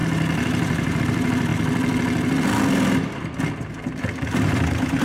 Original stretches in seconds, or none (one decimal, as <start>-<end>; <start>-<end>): 1.5-3.5